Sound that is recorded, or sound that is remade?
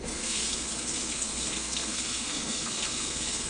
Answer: remade